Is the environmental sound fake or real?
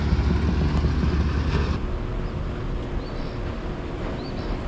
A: real